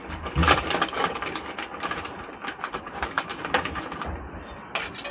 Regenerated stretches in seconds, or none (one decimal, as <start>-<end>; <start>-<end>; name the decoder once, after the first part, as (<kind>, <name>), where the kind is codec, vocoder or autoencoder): 0.0-1.7 (codec, DAC); 2.8-3.3